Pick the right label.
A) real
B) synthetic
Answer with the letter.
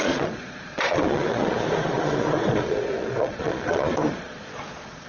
B